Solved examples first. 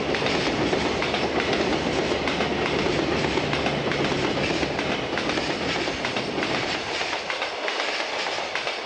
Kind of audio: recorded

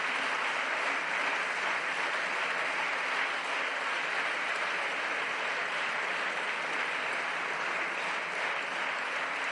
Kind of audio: recorded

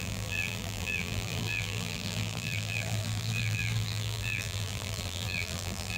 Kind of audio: remade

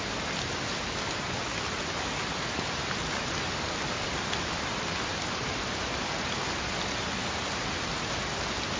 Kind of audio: recorded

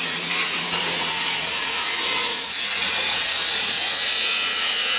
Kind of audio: remade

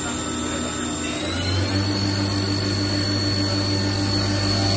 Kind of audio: recorded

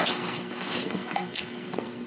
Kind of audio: remade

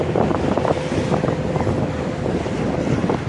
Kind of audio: recorded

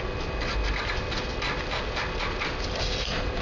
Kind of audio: recorded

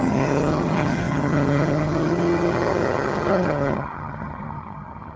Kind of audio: remade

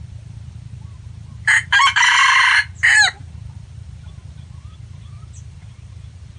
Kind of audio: remade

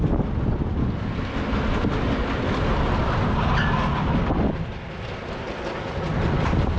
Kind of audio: recorded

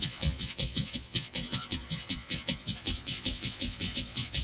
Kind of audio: remade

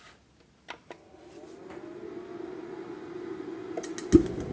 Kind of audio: recorded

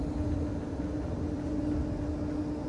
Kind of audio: recorded